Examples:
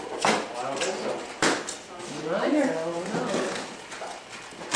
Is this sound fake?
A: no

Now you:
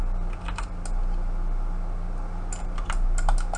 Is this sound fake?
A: no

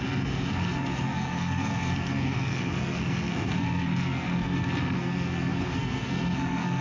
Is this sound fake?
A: yes